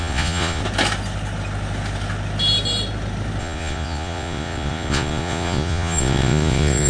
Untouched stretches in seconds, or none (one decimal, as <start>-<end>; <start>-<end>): 0.6-3.4